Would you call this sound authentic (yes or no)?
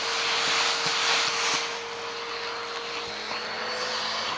yes